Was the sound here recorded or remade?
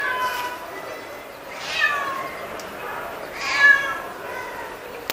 recorded